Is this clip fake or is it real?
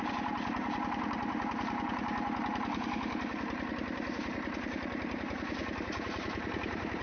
fake